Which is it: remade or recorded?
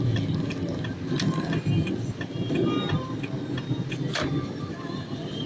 recorded